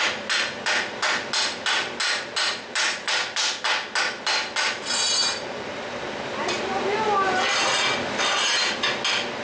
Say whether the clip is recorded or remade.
recorded